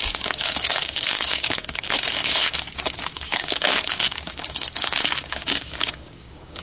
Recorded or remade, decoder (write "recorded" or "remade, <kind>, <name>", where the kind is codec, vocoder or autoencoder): remade, codec, DAC